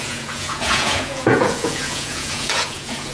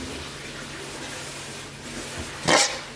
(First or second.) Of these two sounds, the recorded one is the second